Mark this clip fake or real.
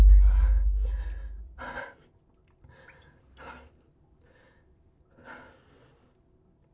real